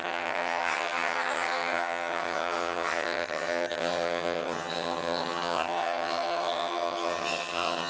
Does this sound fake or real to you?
fake